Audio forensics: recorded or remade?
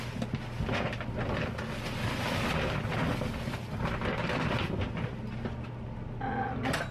recorded